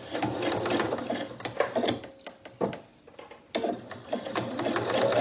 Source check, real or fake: real